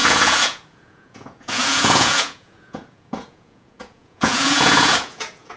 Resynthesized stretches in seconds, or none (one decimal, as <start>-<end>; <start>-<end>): 0.0-5.6